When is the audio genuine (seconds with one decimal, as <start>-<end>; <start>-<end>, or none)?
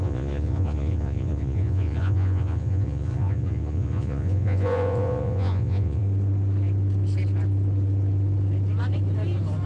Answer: 6.0-9.7